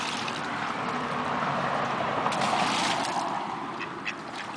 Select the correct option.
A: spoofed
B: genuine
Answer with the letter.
B